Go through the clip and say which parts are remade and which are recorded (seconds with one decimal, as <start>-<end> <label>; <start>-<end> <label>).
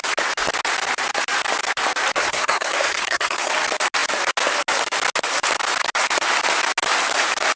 0.0-2.2 recorded; 2.2-3.5 remade; 3.5-7.6 recorded